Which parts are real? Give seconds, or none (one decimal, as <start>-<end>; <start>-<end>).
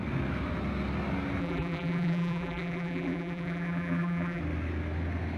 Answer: 0.0-1.4; 4.4-5.4